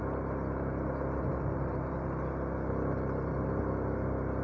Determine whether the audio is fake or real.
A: real